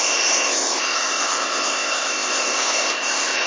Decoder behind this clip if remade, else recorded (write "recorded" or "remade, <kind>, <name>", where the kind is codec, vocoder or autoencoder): remade, codec, ZipCodec